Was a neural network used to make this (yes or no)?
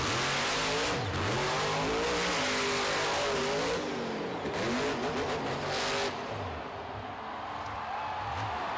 no